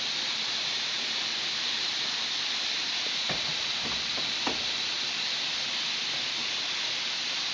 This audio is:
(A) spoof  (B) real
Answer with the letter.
B